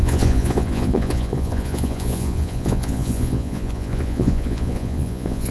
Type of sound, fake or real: fake